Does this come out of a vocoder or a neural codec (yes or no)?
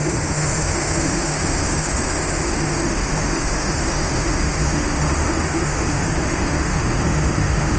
yes